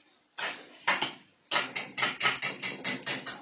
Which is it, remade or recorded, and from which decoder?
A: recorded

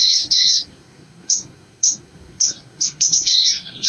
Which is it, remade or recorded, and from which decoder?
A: remade, codec, SNAC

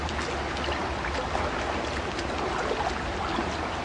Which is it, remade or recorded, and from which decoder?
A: recorded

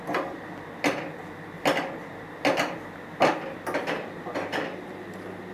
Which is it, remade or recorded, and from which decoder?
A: recorded